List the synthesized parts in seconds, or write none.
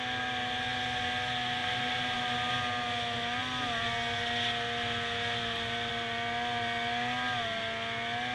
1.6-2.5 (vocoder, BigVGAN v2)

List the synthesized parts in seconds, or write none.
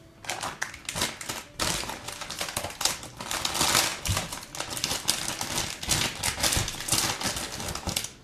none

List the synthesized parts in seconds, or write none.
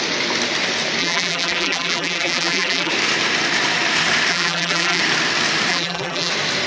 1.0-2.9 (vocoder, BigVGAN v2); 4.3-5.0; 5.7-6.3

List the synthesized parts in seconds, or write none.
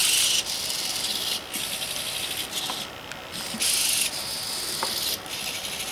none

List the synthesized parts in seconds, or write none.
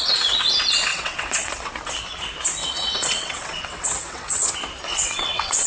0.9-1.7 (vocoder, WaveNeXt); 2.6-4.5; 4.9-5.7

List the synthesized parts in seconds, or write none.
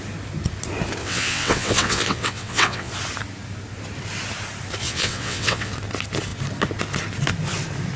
1.0-2.9 (vocoder, WaveNeXt); 4.8-5.7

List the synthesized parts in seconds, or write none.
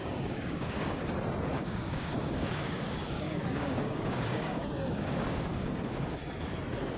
0.0-1.1 (codec, DAC); 1.5-5.7